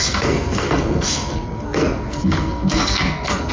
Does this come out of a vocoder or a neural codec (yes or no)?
yes